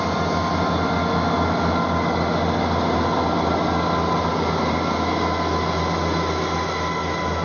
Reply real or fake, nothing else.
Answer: real